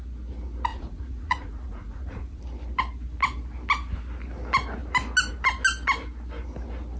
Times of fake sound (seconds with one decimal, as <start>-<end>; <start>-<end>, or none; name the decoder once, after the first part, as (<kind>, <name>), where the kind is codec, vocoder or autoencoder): 0.7-2.4 (vocoder, Vocos)